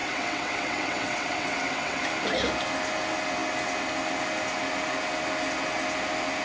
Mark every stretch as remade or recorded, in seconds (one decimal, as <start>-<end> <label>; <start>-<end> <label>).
0.0-2.0 remade; 2.0-6.4 recorded